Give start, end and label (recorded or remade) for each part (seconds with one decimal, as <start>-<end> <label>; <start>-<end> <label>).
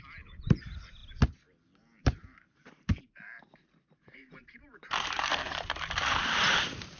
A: 0.0-1.0 remade; 1.0-2.0 recorded; 2.0-7.0 remade